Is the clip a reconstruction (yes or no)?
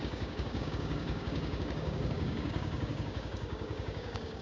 yes